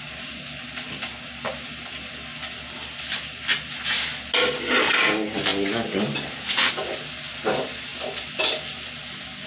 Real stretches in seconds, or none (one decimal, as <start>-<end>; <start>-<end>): 0.0-2.3; 3.4-7.9

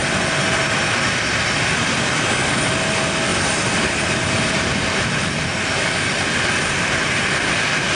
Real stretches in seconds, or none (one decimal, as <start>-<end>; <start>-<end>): 0.0-3.3; 4.0-4.7; 5.3-8.0